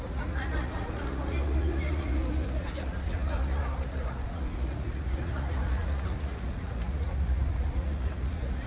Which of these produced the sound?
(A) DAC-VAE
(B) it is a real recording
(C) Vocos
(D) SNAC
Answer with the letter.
C